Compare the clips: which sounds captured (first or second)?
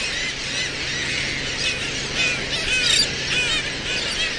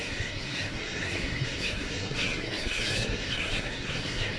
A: first